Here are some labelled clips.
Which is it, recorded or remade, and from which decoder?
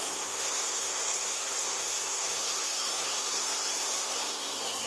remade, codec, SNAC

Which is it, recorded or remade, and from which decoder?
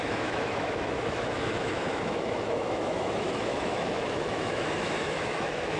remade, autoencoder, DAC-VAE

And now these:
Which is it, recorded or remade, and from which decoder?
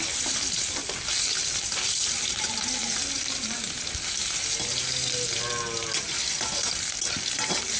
recorded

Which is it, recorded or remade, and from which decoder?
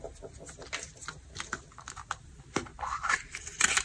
recorded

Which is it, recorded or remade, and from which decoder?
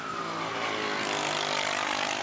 recorded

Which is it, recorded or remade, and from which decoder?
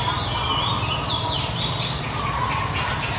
recorded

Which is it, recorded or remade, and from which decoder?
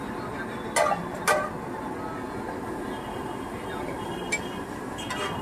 recorded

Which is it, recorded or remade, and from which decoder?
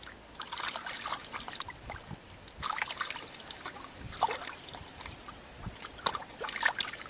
recorded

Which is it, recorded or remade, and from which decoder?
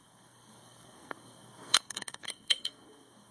remade, codec, SNAC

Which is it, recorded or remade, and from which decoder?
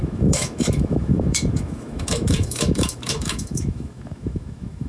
remade, autoencoder, DAC-VAE